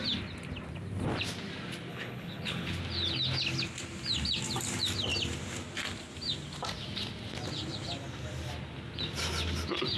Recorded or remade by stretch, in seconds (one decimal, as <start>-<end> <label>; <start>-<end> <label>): 0.0-1.9 recorded; 1.9-2.8 remade; 2.8-10.0 recorded